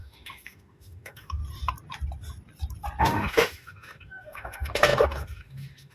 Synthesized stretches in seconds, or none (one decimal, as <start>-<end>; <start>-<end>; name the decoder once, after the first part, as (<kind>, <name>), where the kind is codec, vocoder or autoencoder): 0.0-1.4 (autoencoder, DAC-VAE); 3.0-5.9